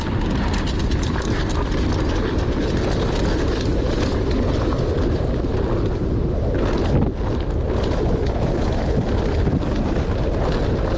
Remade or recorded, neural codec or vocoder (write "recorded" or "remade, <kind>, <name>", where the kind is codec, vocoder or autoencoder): recorded